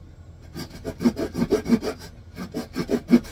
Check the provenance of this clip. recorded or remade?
recorded